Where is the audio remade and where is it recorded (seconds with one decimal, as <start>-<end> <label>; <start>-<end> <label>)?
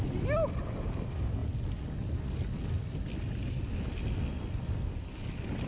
0.0-5.7 recorded